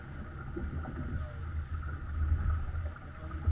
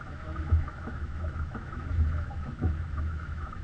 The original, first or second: first